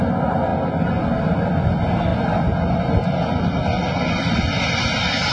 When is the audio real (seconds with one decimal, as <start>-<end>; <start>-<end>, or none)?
0.0-5.3